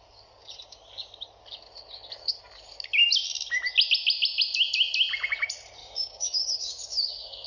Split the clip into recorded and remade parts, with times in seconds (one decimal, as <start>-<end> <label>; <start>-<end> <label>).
0.0-5.8 recorded; 5.8-7.5 remade